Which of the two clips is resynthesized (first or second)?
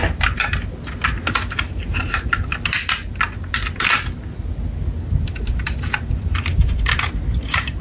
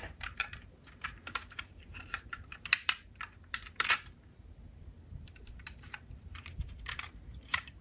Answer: second